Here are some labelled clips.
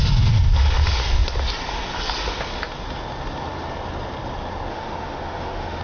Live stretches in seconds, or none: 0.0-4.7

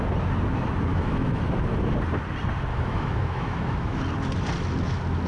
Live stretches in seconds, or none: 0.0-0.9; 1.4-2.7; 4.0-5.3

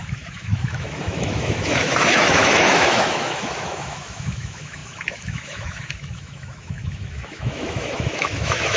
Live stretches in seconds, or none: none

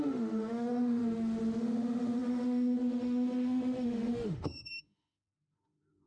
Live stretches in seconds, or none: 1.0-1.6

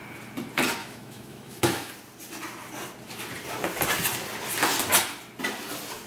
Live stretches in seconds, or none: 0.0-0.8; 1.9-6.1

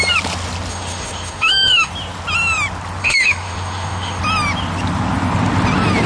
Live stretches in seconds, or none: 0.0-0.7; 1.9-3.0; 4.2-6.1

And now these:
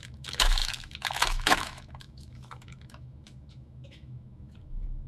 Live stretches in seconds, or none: none

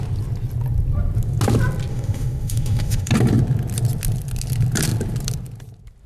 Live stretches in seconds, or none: 0.0-1.9; 3.1-6.1